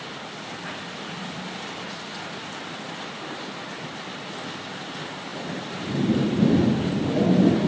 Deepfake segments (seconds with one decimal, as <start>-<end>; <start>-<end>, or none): none